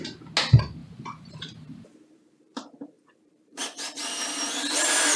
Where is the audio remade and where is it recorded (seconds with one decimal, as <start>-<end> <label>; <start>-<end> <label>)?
0.0-0.8 recorded; 0.8-3.6 remade; 3.6-5.2 recorded